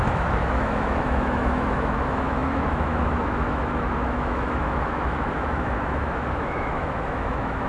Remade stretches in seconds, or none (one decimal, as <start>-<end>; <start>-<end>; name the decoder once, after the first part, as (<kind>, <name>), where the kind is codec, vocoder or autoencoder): 0.0-7.7 (autoencoder, DAC-VAE)